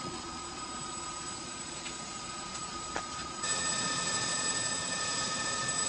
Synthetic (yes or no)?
yes